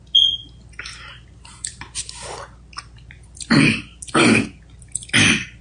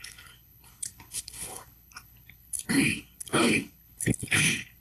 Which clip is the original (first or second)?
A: first